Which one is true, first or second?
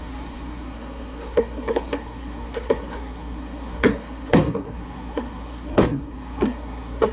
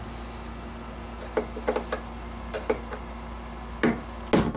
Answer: second